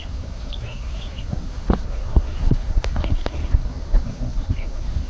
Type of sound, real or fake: fake